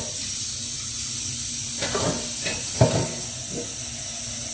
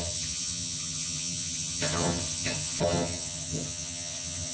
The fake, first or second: second